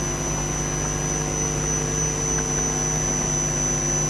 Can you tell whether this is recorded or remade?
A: recorded